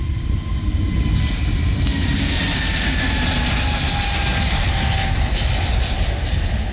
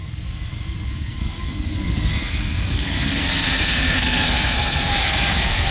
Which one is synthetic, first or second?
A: second